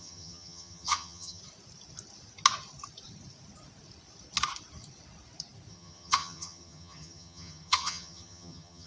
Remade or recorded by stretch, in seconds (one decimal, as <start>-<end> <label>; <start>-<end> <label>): 0.0-1.4 remade; 1.4-5.7 recorded; 5.7-8.9 remade